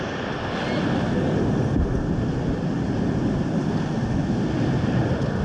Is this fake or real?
real